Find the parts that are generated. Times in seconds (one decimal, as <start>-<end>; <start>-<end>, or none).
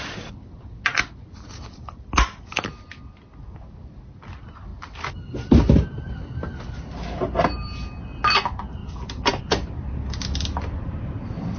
none